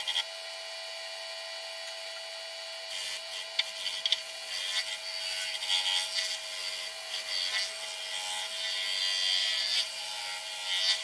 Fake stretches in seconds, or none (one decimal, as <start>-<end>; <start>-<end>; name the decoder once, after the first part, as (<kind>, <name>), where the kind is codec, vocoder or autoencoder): 9.4-10.2 (vocoder, BigVGAN v2)